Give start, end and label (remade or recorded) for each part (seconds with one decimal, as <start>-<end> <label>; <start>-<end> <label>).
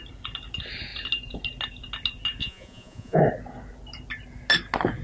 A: 0.0-2.4 recorded; 2.4-3.2 remade; 3.2-5.0 recorded